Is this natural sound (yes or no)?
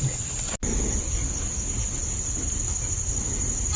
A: yes